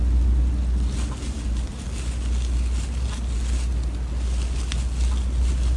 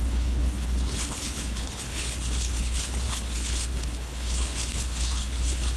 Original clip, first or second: first